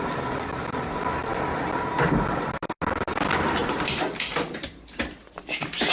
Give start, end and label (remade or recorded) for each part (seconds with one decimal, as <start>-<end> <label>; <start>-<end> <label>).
0.0-3.6 recorded; 3.6-5.5 remade; 5.5-5.9 recorded